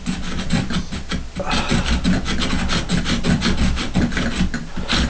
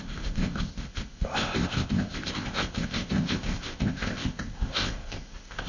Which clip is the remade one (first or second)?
second